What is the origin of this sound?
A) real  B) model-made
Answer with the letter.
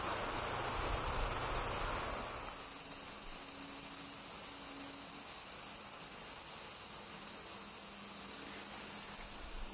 A